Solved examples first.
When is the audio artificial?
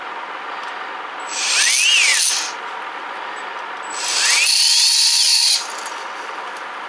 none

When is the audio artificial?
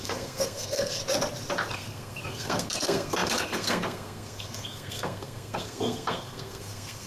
0.0-1.0 (codec, SNAC); 1.7-7.1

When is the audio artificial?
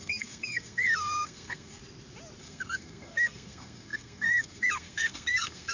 0.0-1.8 (codec, SNAC); 2.4-5.7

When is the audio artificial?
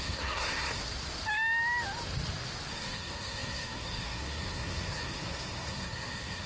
0.0-0.8 (codec, SNAC); 2.7-6.5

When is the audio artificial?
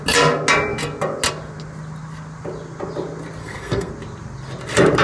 3.4-3.9 (codec, SNAC)